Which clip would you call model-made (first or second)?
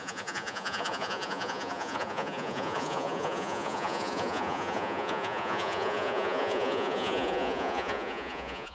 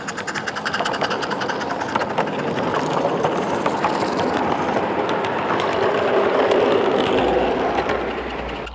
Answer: first